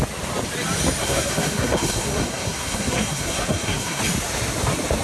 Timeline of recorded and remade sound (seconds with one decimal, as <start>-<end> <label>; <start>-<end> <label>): 0.0-1.0 recorded; 1.0-4.0 remade; 4.0-5.0 recorded